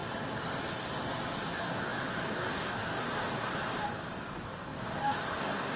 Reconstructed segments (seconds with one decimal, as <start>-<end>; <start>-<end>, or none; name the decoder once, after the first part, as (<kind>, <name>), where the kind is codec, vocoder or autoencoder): 1.5-3.5 (codec, DAC); 4.1-5.8